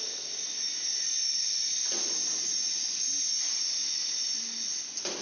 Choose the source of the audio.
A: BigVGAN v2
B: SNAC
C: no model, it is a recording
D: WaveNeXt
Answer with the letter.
C